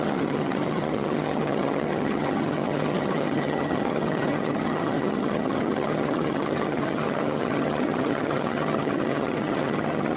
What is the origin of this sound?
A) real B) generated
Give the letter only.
B